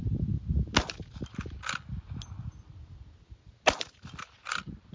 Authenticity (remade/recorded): recorded